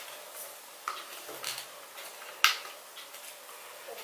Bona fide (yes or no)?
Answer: yes